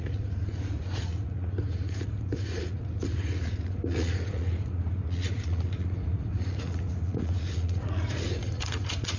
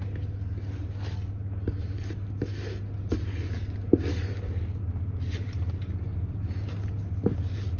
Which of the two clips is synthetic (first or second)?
first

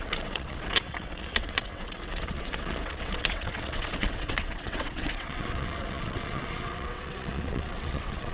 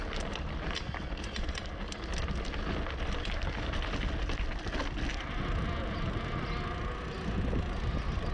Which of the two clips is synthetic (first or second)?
first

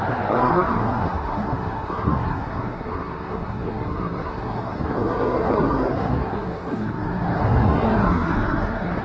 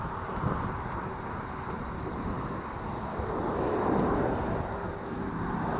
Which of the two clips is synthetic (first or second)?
first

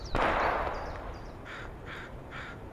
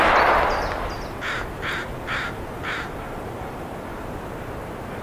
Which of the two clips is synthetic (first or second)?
first